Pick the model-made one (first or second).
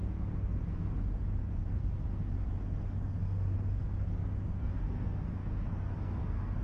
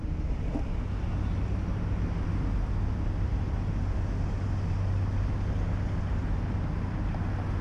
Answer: first